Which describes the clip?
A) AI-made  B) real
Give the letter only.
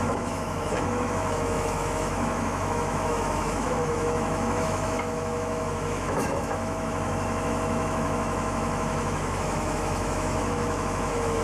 A